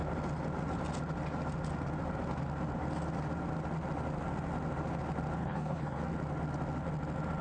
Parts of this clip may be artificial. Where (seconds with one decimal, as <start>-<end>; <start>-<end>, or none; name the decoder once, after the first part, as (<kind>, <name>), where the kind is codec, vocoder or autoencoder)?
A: 5.4-6.0 (codec, HILCodec)